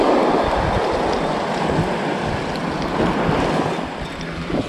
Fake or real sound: real